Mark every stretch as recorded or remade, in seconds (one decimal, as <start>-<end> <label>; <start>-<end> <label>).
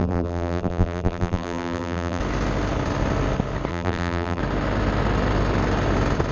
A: 0.0-2.2 remade; 2.2-3.7 recorded; 3.7-4.4 remade; 4.4-6.3 recorded